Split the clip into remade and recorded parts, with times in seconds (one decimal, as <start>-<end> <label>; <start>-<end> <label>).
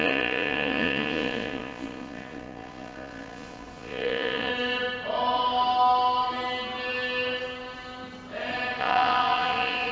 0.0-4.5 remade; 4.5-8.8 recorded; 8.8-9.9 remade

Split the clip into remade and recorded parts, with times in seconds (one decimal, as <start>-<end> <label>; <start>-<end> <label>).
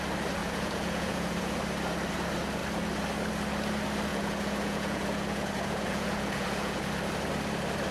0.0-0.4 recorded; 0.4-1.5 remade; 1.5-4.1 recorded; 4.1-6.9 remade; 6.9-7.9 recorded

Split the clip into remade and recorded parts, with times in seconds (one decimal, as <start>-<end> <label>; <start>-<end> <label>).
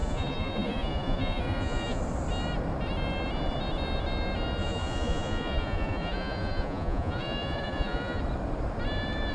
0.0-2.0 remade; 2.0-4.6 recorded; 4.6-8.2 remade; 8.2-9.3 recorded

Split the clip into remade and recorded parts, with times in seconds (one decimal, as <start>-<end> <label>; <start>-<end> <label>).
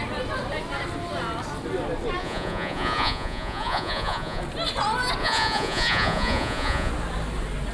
0.0-2.2 recorded; 2.2-4.4 remade; 4.4-5.2 recorded; 5.2-6.9 remade; 6.9-7.7 recorded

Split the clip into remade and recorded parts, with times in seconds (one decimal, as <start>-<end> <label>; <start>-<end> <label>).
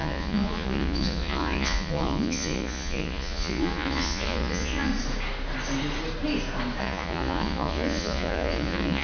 0.0-4.9 remade; 4.9-6.8 recorded; 6.8-9.0 remade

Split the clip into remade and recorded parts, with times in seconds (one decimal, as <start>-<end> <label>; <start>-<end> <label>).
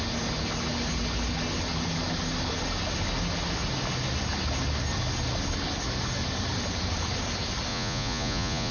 0.0-7.7 recorded; 7.7-8.7 remade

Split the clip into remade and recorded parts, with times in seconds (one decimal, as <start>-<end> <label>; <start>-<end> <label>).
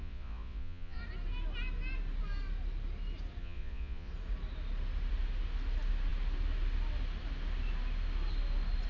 0.0-1.0 remade; 1.0-3.4 recorded; 3.4-4.1 remade; 4.1-8.9 recorded